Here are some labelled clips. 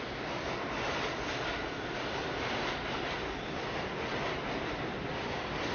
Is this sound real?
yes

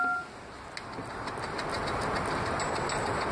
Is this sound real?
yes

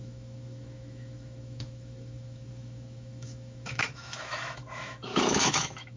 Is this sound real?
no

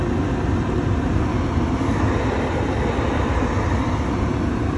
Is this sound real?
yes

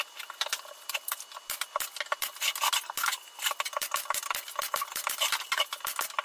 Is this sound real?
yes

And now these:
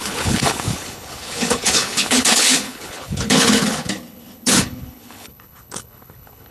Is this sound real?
no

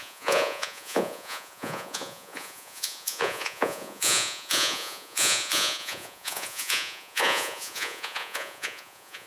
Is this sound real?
no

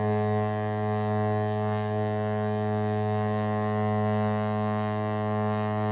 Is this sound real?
yes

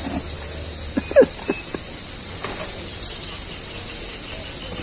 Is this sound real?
yes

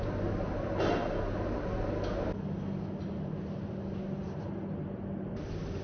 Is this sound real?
yes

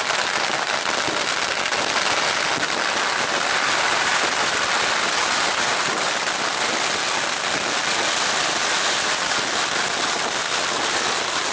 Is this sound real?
yes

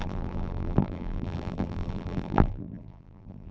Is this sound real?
no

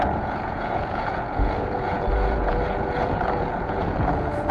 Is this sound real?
no